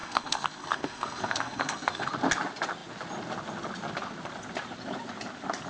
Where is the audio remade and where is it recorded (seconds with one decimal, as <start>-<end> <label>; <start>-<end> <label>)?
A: 0.0-2.1 remade; 2.1-5.7 recorded